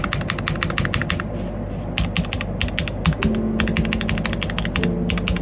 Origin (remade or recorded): recorded